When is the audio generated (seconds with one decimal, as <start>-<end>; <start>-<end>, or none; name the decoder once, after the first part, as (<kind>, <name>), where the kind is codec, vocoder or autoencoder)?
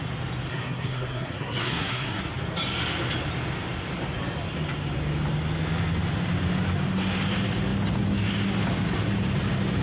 0.5-2.2 (codec, SNAC)